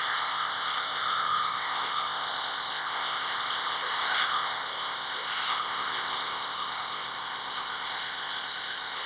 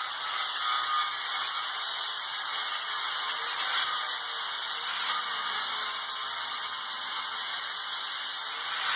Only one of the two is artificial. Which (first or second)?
first